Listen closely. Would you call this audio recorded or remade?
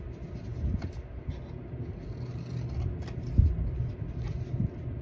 recorded